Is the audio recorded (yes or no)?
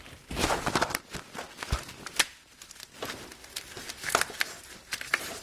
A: yes